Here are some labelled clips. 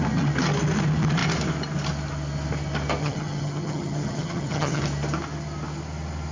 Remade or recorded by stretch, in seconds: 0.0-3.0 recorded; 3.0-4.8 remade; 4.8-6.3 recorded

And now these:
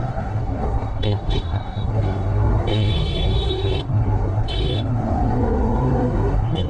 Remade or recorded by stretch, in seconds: 0.0-6.7 remade

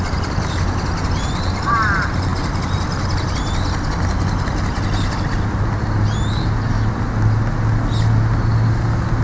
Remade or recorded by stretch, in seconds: 0.0-9.2 recorded

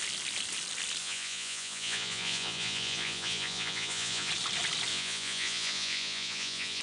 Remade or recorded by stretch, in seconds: 0.0-1.0 recorded; 1.0-4.3 remade; 4.3-4.9 recorded; 4.9-6.8 remade

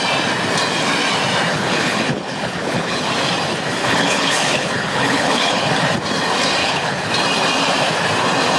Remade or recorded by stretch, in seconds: 0.0-1.5 recorded; 1.5-3.1 remade; 3.1-3.8 recorded; 3.8-5.7 remade; 5.7-6.6 recorded; 6.6-7.1 remade; 7.1-8.6 recorded

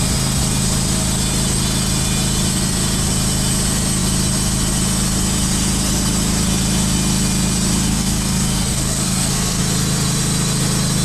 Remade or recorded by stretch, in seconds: 0.0-7.9 recorded; 7.9-9.6 remade; 9.6-11.0 recorded

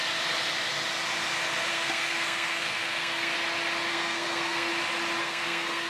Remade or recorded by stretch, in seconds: 0.0-1.7 recorded; 1.7-3.3 remade; 3.3-3.9 recorded; 3.9-4.7 remade; 4.7-5.2 recorded; 5.2-5.9 remade